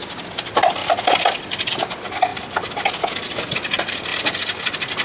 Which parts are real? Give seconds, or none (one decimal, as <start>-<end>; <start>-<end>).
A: 0.0-5.0